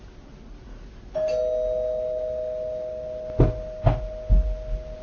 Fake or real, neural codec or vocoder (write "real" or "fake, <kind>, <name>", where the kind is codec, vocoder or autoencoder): real